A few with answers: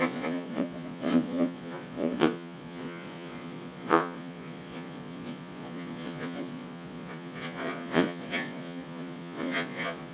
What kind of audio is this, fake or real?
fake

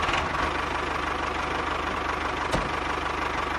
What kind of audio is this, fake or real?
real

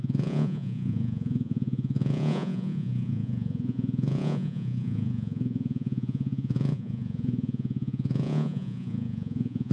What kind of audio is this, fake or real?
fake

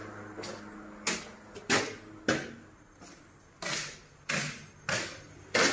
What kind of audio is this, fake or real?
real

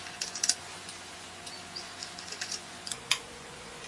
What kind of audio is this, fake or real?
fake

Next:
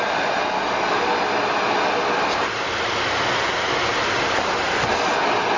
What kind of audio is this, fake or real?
real